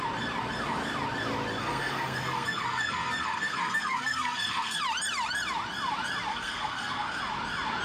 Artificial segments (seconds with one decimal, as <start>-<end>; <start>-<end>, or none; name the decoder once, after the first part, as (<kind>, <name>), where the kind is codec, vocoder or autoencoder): 1.6-4.8 (codec, SNAC); 6.3-7.2

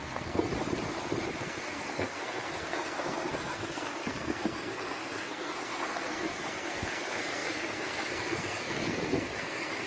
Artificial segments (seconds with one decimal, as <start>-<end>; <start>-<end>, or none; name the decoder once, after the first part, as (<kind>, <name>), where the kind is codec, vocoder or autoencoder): 0.0-0.5 (codec, SNAC); 1.4-9.9

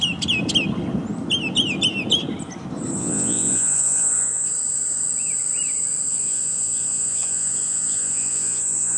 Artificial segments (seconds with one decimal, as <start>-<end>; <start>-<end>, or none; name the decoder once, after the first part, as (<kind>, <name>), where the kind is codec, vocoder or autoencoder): 3.0-4.5 (vocoder, Vocos); 6.1-9.0

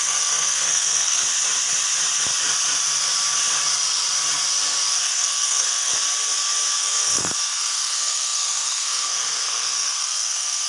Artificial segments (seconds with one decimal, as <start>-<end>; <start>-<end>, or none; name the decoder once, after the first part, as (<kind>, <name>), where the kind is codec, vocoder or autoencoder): 0.0-1.2 (codec, SNAC); 5.0-5.9; 6.7-10.7